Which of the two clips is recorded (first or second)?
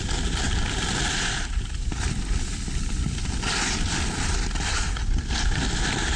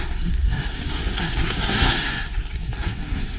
first